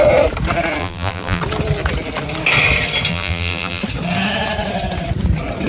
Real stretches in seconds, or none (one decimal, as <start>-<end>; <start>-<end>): 0.0-0.8; 1.4-3.1; 3.8-5.7